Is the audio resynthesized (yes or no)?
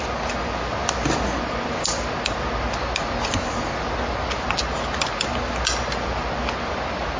no